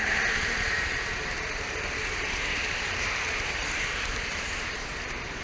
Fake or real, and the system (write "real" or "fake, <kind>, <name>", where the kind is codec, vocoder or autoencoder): fake, vocoder, BigVGAN v2